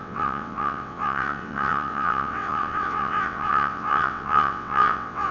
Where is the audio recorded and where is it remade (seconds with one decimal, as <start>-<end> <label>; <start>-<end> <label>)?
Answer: 0.0-5.3 remade